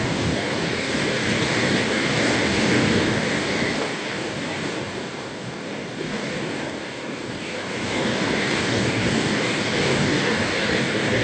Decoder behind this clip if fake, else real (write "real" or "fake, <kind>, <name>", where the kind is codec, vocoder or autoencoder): fake, codec, DAC